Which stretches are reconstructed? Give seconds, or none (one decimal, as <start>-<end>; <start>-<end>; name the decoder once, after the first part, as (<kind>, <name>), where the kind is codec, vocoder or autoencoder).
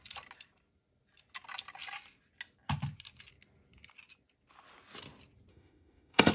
5.5-6.3 (autoencoder, DAC-VAE)